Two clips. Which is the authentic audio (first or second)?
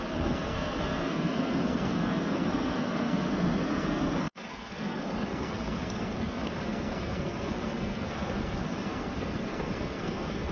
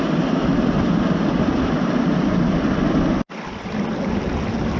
second